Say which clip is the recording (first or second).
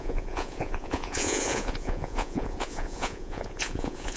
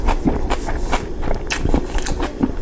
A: second